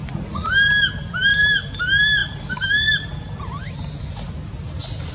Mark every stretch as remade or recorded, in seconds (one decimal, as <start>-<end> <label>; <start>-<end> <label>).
0.0-0.5 remade; 0.5-5.1 recorded